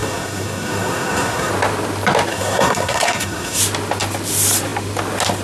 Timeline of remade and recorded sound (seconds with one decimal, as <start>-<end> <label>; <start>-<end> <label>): 0.0-1.5 remade; 1.5-2.3 recorded; 2.3-3.6 remade; 3.6-5.4 recorded